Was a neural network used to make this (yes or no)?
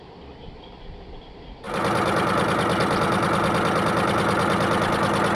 no